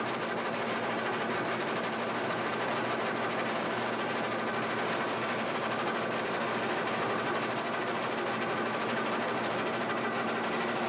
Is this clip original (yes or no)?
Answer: yes